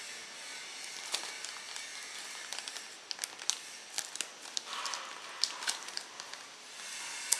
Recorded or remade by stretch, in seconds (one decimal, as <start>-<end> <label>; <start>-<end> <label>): 0.0-7.4 recorded